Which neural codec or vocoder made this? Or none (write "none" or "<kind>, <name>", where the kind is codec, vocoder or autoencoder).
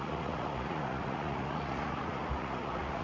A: vocoder, Vocos